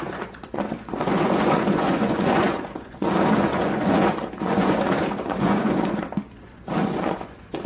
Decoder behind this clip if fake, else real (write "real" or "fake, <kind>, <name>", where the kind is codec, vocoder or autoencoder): fake, vocoder, Vocos